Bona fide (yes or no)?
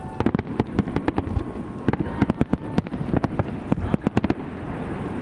yes